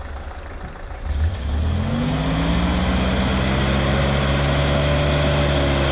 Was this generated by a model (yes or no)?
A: no